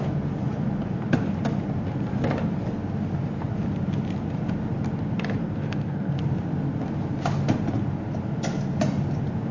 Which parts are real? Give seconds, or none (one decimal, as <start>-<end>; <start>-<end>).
0.0-5.4; 6.2-9.5